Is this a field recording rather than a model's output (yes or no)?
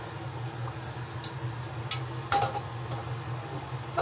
yes